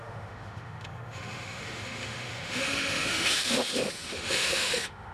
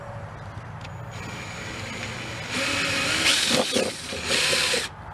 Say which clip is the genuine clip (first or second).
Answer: second